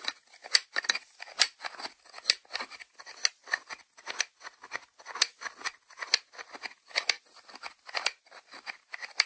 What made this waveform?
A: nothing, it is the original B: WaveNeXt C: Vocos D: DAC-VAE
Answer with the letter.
A